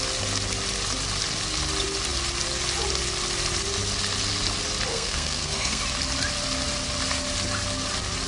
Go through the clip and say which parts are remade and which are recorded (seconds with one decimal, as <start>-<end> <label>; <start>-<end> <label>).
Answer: 0.0-4.9 recorded; 4.9-5.8 remade; 5.8-8.3 recorded